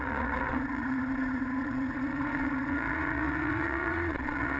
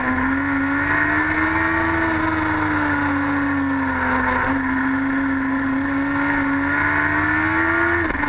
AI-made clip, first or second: first